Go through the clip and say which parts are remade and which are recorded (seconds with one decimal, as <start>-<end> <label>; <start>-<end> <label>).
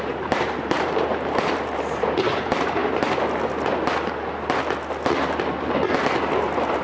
0.0-2.8 remade; 2.8-6.3 recorded; 6.3-6.8 remade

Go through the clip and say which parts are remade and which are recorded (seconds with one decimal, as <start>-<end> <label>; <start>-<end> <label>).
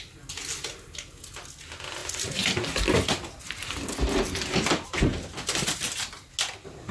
0.0-2.0 recorded; 2.0-3.4 remade; 3.4-5.1 recorded; 5.1-6.0 remade; 6.0-6.9 recorded